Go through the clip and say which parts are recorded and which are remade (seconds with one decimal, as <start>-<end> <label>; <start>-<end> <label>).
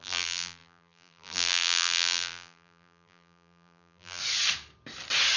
0.0-4.2 remade; 4.2-5.4 recorded